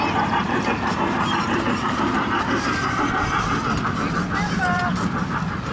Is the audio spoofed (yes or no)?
yes